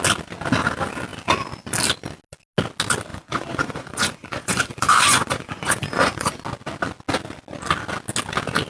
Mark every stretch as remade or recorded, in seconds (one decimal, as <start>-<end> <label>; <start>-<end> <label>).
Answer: 0.0-3.1 recorded; 3.1-6.4 remade; 6.4-8.7 recorded